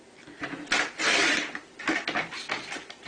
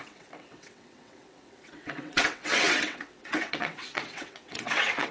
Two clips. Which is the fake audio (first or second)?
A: second